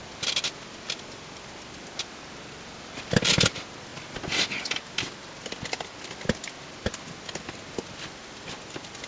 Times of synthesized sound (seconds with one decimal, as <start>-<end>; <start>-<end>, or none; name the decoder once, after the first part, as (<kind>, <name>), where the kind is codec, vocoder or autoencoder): none